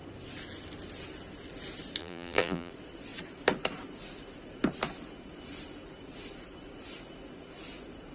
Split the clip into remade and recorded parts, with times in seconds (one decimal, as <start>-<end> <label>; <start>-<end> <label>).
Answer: 0.0-2.0 recorded; 2.0-2.7 remade; 2.7-8.1 recorded